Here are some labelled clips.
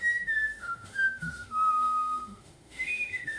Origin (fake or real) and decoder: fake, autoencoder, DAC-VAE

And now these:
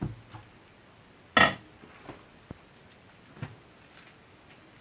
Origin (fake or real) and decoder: real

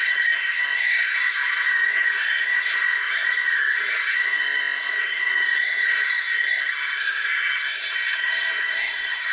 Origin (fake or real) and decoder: fake, codec, SNAC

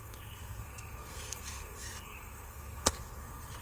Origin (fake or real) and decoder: fake, codec, SNAC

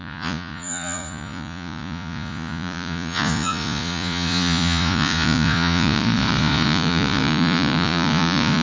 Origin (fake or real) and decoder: fake, vocoder, Vocos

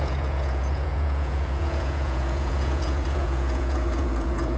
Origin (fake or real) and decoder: fake, vocoder, Vocos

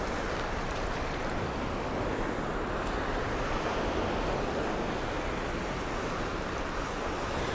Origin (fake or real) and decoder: real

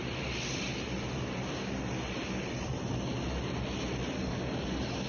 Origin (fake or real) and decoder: real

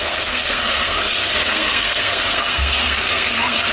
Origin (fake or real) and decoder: fake, codec, SNAC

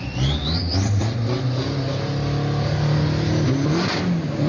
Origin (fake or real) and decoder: real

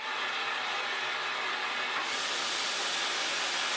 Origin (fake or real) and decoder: real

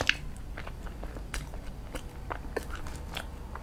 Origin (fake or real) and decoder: real